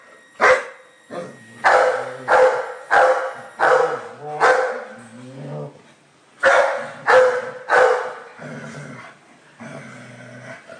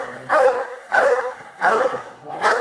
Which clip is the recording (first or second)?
first